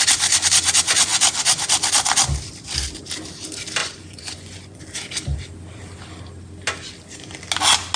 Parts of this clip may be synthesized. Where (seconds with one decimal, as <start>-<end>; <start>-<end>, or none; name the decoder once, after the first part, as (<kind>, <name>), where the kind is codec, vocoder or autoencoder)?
3.8-4.8 (vocoder, Vocos)

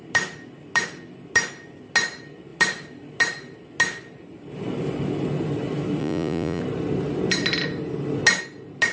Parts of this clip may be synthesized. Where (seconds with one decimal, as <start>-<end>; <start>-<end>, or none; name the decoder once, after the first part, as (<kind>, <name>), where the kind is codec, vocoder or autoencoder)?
6.0-6.6 (vocoder, Vocos)

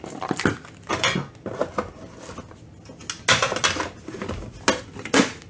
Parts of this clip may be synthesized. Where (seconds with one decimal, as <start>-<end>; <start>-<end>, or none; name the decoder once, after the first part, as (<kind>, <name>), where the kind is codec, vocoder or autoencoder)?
none